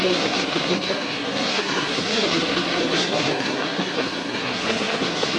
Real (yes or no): no